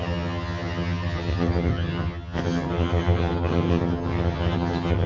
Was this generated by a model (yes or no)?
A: yes